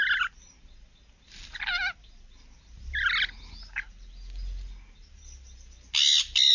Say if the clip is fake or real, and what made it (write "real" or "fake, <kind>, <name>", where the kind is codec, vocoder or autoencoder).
real